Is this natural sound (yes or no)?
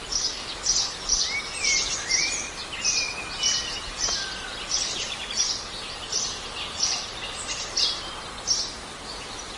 yes